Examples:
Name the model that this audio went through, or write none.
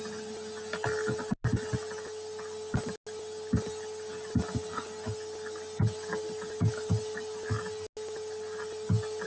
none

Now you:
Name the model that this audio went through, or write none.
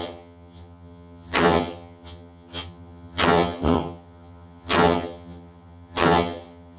vocoder, HiFi-GAN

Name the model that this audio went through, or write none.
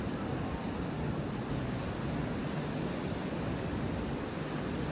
none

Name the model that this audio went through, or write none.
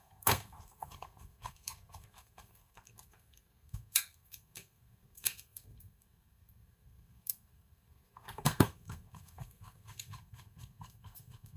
codec, SNAC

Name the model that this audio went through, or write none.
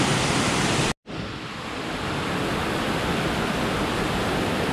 none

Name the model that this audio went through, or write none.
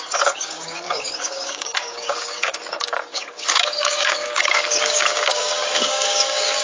codec, DAC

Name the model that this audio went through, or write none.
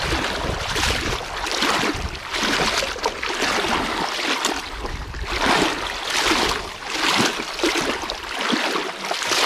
none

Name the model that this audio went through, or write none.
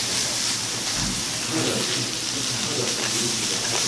vocoder, BigVGAN v2